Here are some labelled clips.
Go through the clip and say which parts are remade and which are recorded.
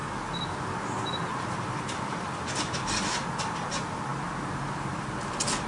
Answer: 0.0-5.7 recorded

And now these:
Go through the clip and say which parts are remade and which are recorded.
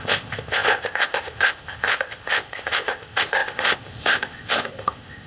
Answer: 0.0-5.3 remade